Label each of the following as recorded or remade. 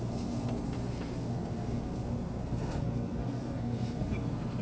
remade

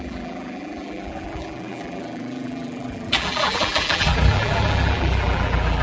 remade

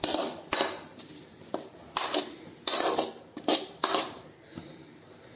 remade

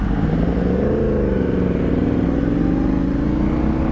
recorded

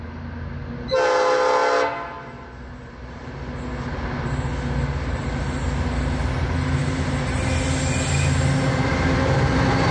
recorded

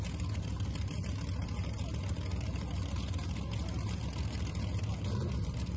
recorded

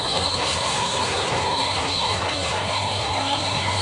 remade